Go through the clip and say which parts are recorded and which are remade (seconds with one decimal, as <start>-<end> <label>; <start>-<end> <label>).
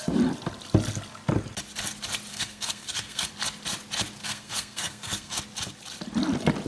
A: 0.0-2.3 recorded; 2.3-3.3 remade; 3.3-4.2 recorded; 4.2-5.4 remade; 5.4-6.7 recorded